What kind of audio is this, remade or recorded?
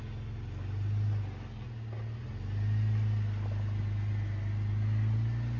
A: recorded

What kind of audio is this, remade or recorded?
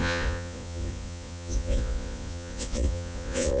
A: remade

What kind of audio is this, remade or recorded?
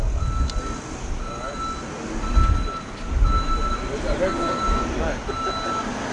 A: recorded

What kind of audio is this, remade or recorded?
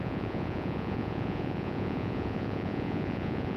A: remade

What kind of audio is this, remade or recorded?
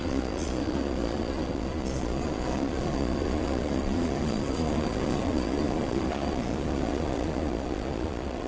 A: remade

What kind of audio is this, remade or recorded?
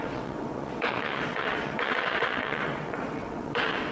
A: remade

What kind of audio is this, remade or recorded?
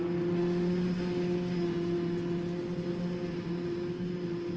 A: recorded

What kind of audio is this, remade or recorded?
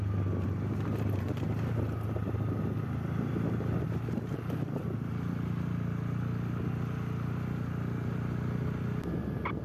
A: recorded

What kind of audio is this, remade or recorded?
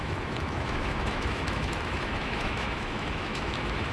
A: remade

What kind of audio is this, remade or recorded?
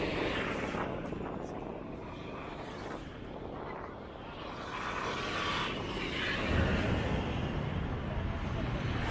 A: recorded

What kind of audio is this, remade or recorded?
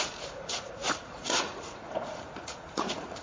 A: remade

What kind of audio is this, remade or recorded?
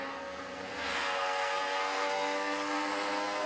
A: remade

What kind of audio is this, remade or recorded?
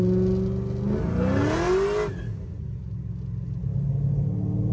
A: recorded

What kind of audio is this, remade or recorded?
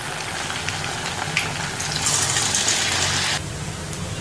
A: recorded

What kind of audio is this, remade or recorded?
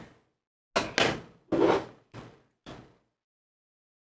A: recorded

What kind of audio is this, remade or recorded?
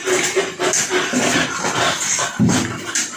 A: recorded